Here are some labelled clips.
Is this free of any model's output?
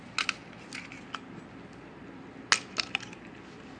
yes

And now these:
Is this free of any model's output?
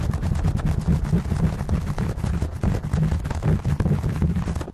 yes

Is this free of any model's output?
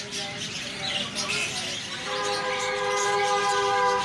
yes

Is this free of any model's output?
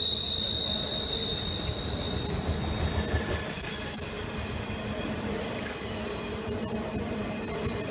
yes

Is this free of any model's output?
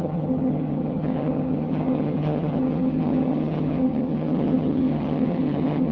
no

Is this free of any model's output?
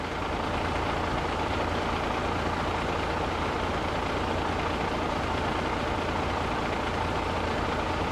yes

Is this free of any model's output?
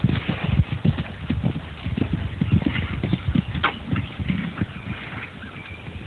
yes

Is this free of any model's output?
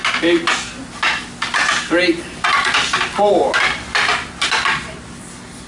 yes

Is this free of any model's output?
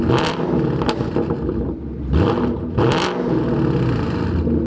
yes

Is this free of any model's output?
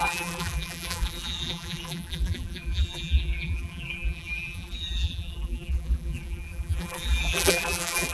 no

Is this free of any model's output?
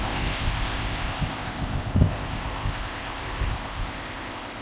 no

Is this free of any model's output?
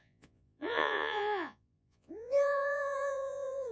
no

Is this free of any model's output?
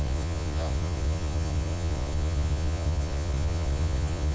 no